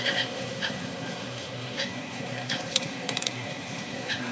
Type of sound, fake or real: fake